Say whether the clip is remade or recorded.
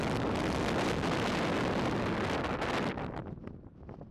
recorded